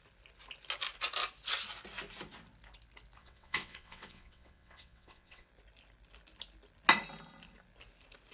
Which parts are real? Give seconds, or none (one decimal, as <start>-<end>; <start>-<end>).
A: 0.0-3.2; 5.5-8.3